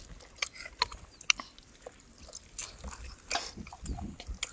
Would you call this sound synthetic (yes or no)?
no